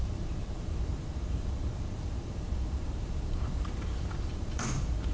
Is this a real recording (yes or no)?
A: no